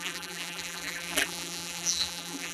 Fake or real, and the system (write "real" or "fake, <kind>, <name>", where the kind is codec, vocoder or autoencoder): fake, vocoder, BigVGAN v2